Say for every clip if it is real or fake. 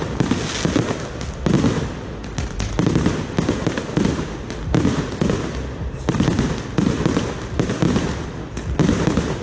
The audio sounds real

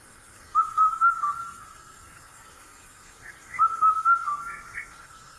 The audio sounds fake